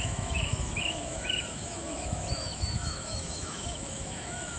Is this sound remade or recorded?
remade